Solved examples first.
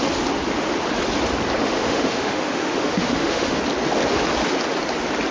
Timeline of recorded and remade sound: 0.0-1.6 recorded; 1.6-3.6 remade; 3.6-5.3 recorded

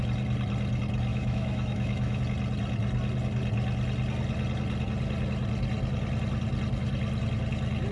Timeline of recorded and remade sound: 0.0-1.1 recorded; 1.1-2.2 remade; 2.2-7.9 recorded